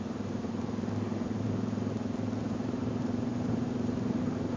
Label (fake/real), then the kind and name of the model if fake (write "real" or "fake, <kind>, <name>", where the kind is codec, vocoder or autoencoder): fake, vocoder, BigVGAN v2